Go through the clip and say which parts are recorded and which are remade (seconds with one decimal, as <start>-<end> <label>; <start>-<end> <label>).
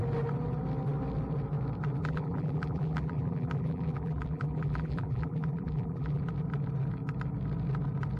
0.0-2.0 recorded; 2.0-6.2 remade; 6.2-8.2 recorded